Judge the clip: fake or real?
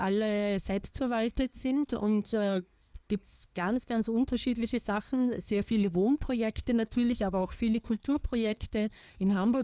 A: fake